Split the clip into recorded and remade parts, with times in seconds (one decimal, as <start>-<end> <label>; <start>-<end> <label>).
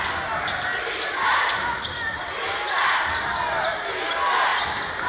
0.0-5.1 recorded